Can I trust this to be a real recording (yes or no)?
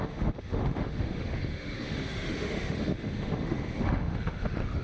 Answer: no